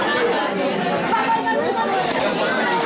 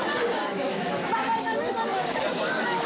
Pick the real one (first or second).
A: first